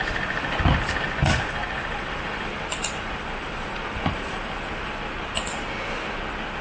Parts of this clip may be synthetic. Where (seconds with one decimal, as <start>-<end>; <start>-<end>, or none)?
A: 1.2-5.0